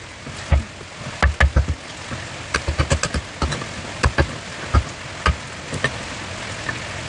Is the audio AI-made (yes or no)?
no